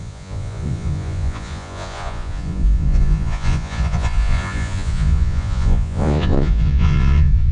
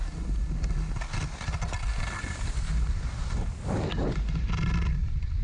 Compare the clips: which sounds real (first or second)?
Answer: second